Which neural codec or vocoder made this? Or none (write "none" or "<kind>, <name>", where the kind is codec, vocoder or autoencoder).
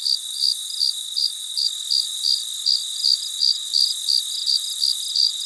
none